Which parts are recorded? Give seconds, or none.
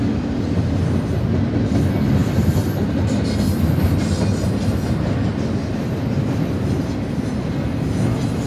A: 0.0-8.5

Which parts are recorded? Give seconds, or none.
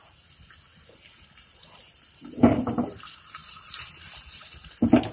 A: none